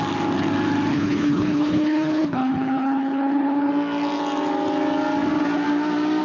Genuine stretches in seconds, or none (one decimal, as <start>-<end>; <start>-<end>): 0.0-0.9; 3.7-6.2